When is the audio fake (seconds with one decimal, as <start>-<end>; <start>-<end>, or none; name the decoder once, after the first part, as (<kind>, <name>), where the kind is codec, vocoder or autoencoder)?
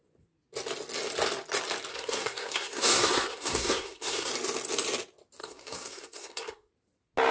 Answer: 1.9-4.3 (codec, SNAC); 5.4-6.7